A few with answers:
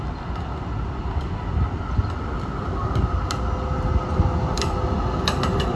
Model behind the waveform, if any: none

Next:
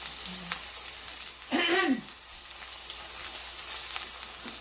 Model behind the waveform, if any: none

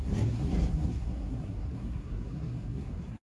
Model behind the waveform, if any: codec, SNAC